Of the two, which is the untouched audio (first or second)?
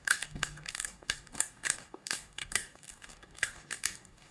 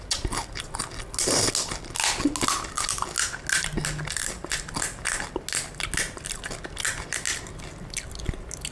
second